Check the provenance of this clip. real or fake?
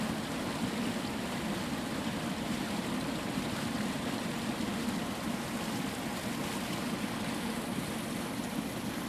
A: real